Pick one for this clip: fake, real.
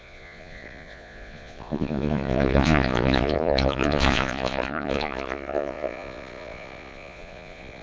fake